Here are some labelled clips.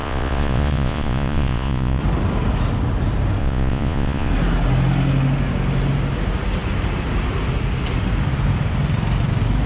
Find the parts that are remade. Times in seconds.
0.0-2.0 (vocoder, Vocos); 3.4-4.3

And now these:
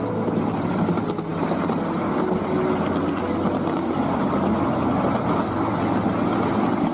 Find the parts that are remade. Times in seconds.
none

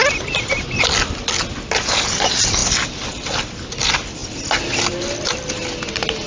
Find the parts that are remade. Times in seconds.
none

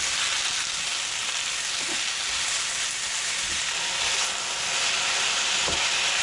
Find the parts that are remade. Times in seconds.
none

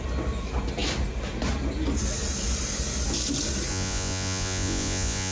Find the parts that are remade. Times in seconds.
3.7-5.3 (vocoder, Vocos)

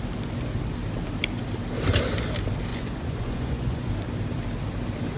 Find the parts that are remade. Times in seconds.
2.7-3.9 (vocoder, Vocos)

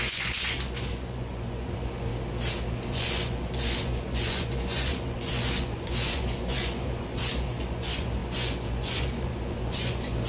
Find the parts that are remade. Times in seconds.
0.0-2.1 (vocoder, Vocos); 2.9-10.3